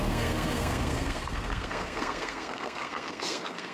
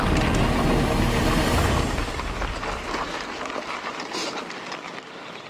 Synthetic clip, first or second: first